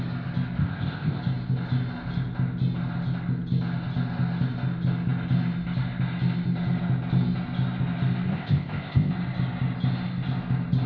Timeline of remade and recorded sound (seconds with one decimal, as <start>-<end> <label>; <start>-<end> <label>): 0.0-0.6 recorded; 0.6-1.2 remade; 1.2-8.3 recorded; 8.3-9.1 remade; 9.1-10.9 recorded